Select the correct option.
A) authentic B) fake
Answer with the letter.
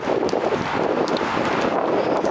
A